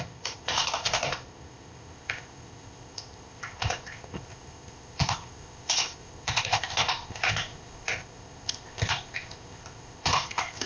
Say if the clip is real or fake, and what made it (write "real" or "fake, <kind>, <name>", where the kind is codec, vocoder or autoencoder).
fake, codec, ZipCodec